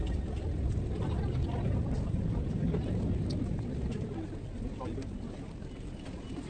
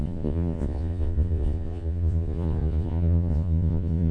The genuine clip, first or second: first